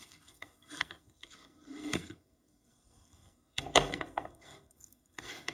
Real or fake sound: fake